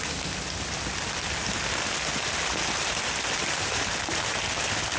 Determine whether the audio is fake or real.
real